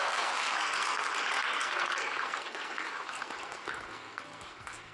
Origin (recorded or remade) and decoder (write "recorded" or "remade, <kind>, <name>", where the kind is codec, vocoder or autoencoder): remade, codec, SNAC